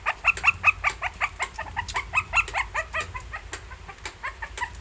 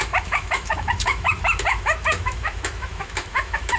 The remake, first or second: second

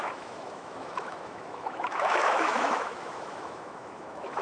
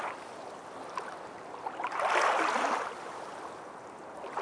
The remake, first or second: first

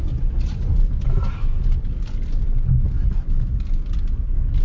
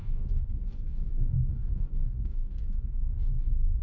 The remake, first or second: second